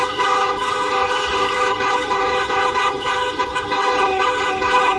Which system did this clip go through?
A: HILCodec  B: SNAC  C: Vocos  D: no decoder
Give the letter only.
A